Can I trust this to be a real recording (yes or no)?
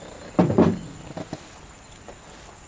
yes